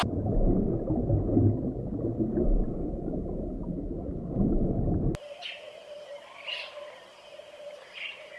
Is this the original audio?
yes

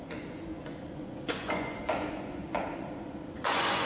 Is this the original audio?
no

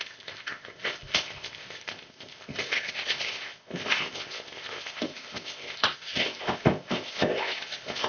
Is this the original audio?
no